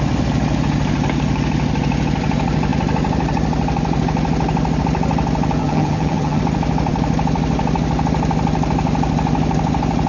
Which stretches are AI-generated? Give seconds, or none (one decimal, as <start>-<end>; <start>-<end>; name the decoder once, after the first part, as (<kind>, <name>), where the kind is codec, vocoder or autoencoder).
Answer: 5.6-6.4 (vocoder, HiFi-GAN)